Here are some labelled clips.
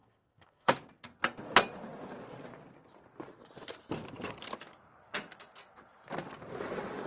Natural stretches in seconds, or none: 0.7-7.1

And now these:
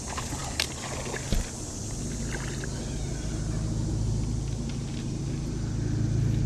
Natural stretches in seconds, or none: 0.0-6.5

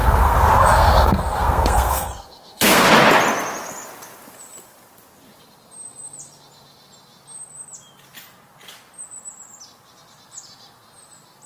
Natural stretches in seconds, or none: 2.9-11.5